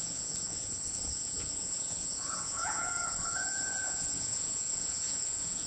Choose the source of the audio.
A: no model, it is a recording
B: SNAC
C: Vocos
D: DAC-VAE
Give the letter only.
C